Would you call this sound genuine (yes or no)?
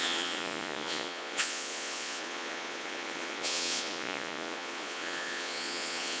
no